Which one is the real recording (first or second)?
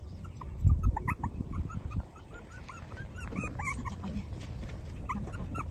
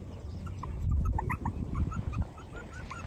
second